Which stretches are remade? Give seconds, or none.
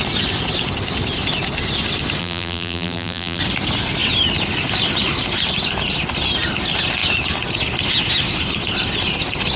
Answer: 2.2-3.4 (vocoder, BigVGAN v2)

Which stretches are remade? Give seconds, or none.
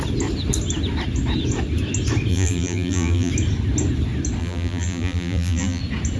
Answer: 2.3-3.3 (vocoder, BigVGAN v2); 4.4-5.8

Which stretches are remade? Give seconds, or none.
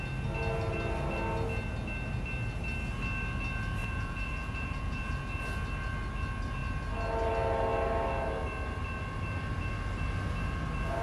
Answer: 3.8-5.2 (vocoder, Vocos)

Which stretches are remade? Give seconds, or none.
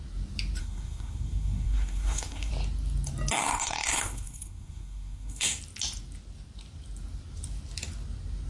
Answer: 0.6-2.5 (codec, SNAC); 3.4-5.6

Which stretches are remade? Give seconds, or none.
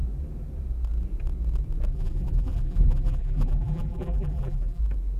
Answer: 1.9-4.8 (vocoder, BigVGAN v2)